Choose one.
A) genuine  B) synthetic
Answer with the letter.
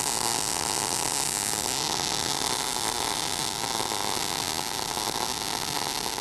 A